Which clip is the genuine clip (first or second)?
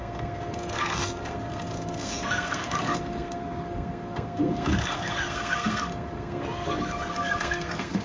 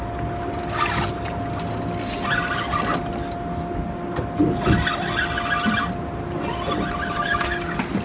second